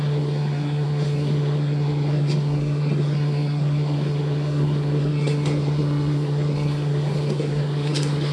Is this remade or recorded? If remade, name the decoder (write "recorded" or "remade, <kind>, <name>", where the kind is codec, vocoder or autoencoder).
remade, codec, SNAC